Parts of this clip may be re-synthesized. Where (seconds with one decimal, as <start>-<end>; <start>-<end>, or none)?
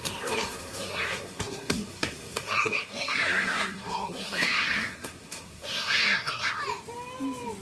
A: 0.0-6.6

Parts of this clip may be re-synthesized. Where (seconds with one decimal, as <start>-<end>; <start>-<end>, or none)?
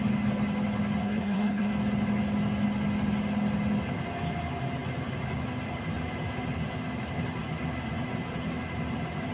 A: 1.0-1.7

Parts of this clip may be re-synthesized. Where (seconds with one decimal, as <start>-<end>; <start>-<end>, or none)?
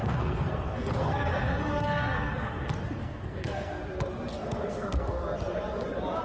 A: 0.0-2.6; 3.0-3.8; 4.3-5.2